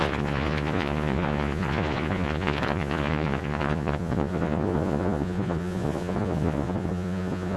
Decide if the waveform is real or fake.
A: fake